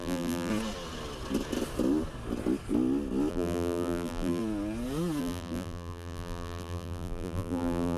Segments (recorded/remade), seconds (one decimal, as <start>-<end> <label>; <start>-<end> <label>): 0.0-0.5 remade; 0.5-3.3 recorded; 3.3-4.4 remade; 4.4-5.2 recorded; 5.2-8.0 remade